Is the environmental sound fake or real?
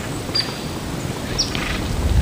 real